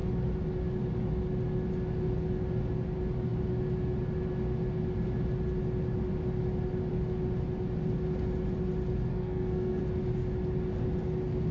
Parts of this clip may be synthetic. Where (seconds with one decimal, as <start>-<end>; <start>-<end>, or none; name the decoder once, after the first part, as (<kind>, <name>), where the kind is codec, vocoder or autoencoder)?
9.1-9.8 (codec, SNAC)